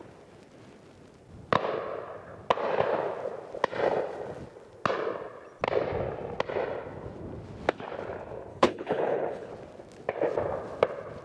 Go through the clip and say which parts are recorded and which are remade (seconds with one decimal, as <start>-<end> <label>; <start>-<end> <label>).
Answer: 0.0-8.5 recorded; 8.5-9.5 remade; 9.5-11.2 recorded